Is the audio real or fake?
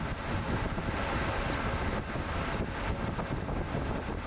real